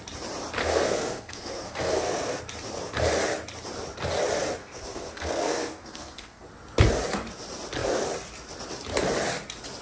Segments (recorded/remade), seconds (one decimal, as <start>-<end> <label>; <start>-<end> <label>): 0.0-0.6 recorded; 0.6-2.4 remade; 2.4-4.6 recorded; 4.6-6.4 remade; 6.4-9.8 recorded